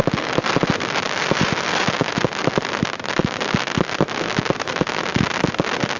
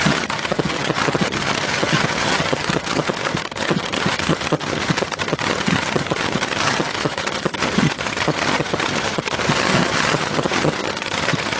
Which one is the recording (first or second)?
first